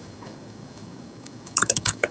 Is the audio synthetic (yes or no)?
yes